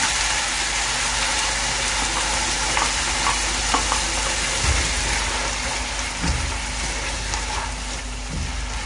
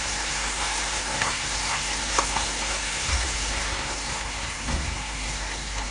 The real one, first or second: first